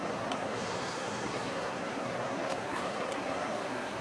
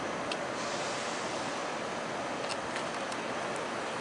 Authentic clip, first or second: second